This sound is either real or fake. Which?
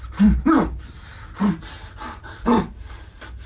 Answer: real